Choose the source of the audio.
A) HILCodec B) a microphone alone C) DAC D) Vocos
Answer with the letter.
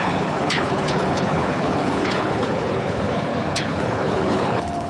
A